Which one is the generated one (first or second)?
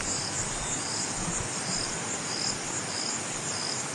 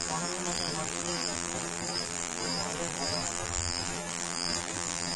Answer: second